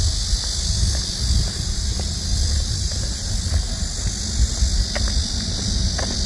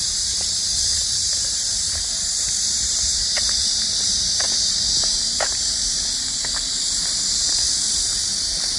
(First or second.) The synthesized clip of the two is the second